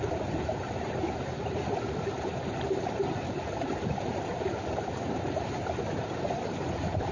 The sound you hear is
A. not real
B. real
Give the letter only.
A